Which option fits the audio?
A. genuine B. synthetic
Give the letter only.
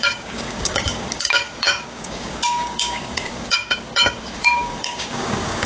B